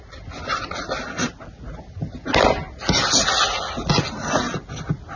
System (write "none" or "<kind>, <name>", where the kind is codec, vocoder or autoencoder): none